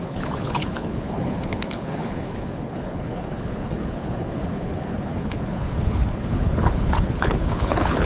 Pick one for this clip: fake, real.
fake